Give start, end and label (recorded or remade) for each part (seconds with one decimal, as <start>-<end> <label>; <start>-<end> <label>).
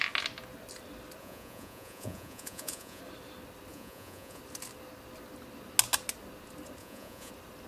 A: 0.0-1.2 recorded; 1.2-3.0 remade; 3.0-3.7 recorded; 3.7-4.4 remade; 4.4-6.8 recorded; 6.8-7.3 remade; 7.3-7.7 recorded